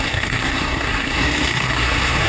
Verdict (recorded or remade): remade